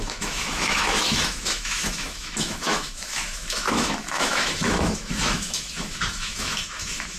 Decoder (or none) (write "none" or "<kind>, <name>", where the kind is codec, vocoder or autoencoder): autoencoder, DAC-VAE